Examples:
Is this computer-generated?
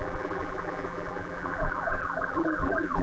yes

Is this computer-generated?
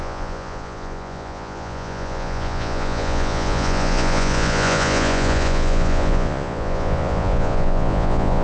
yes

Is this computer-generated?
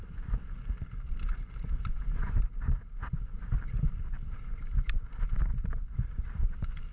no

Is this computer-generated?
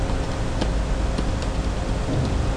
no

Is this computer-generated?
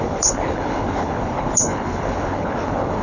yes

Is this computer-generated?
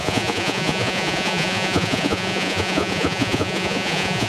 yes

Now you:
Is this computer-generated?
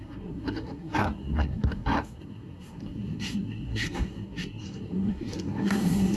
yes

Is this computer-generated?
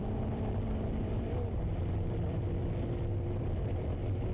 yes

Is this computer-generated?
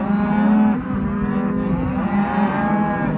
no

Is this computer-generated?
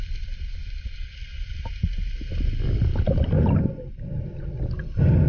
no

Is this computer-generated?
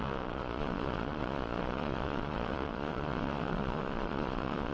yes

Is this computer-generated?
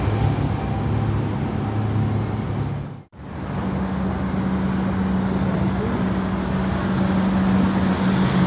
no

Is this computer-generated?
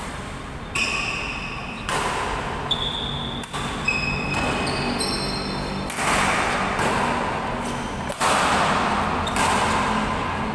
no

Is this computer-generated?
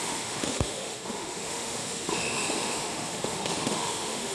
yes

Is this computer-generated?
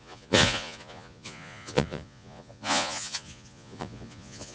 yes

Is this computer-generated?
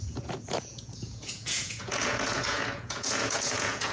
yes